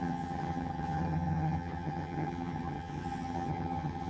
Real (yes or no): no